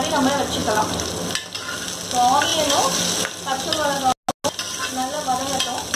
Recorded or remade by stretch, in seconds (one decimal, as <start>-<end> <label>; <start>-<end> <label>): 0.0-6.0 recorded